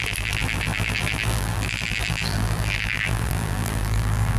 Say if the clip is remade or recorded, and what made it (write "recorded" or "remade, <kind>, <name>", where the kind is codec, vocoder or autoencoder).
remade, vocoder, BigVGAN v2